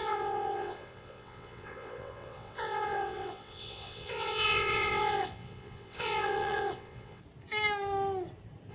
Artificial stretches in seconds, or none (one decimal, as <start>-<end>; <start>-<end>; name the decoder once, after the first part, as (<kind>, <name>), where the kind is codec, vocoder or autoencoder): 0.0-7.2 (vocoder, WaveNeXt)